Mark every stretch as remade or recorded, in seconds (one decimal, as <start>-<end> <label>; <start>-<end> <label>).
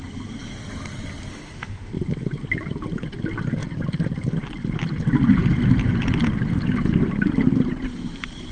0.0-1.3 recorded; 1.3-1.9 remade; 1.9-8.5 recorded